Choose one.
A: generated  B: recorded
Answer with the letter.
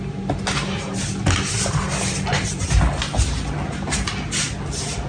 B